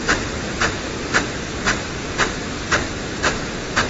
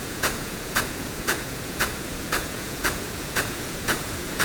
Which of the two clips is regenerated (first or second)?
second